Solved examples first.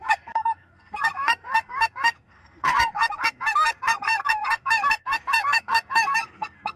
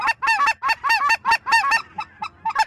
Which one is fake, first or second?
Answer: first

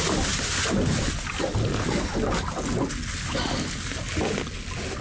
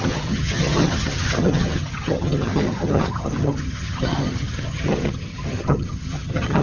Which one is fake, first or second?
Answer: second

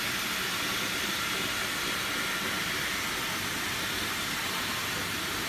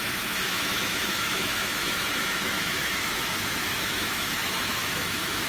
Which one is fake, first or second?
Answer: second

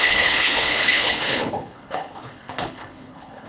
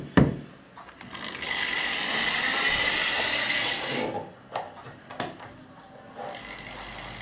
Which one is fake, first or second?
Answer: first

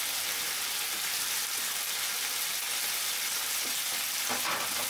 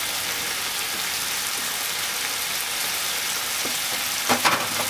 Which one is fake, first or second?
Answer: second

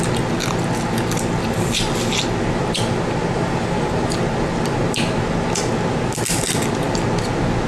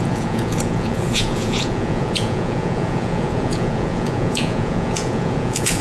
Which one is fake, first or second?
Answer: second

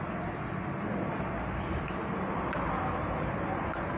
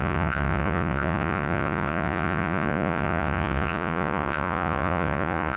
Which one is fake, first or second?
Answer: second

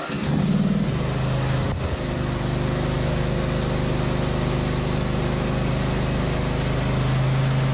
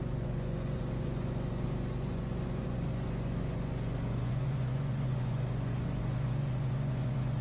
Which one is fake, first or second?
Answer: second